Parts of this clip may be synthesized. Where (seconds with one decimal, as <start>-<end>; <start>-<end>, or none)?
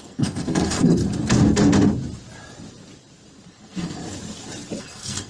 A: 0.0-1.0; 3.5-4.0; 4.8-5.3